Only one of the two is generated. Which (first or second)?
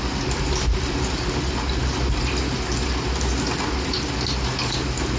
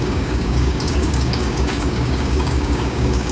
second